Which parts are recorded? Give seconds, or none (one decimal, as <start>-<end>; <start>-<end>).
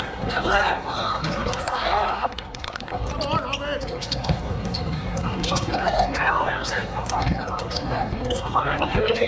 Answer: 3.1-3.8